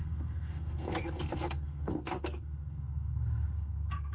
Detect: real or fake fake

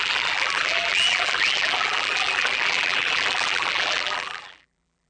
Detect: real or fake fake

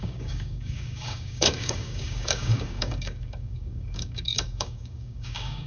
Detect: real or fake fake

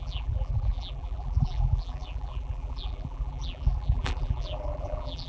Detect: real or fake fake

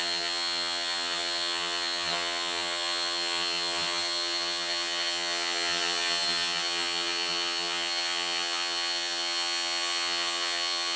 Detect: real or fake fake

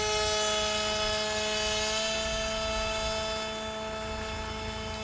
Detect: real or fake real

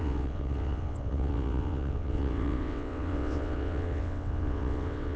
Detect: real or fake fake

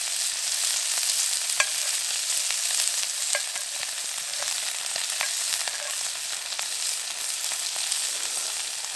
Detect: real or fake real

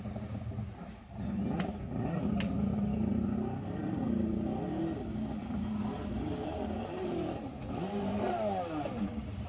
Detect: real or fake real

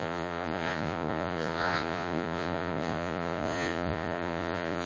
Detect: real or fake fake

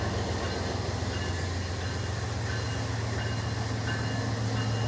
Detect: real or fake real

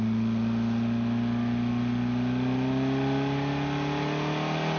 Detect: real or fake real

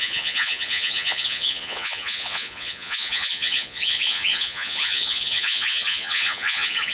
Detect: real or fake fake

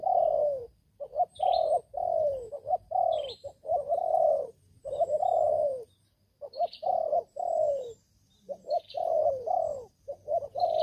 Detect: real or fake fake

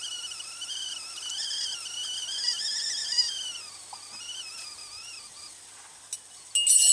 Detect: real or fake real